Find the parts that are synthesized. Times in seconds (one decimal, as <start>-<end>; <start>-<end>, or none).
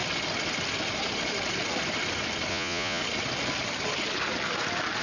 2.5-3.0